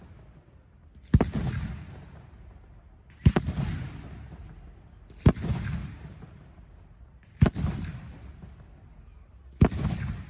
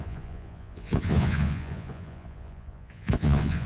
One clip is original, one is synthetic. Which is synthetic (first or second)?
second